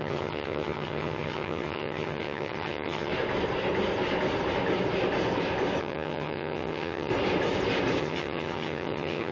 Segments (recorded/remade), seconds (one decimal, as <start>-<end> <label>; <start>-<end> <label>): 0.0-3.1 remade; 3.1-5.8 recorded; 5.8-7.1 remade; 7.1-8.0 recorded; 8.0-9.3 remade